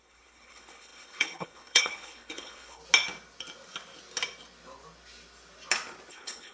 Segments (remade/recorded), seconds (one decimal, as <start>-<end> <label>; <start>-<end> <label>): 0.0-2.8 remade; 2.8-6.1 recorded; 6.1-6.5 remade